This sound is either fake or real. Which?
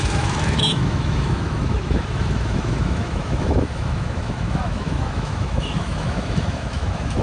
fake